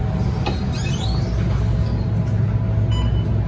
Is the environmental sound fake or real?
real